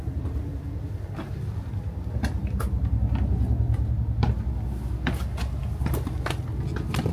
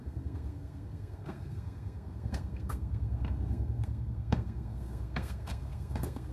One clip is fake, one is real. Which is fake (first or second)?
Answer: second